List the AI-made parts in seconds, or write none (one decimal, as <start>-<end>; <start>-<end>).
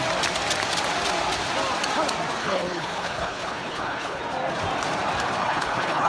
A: 2.4-4.2; 5.4-6.1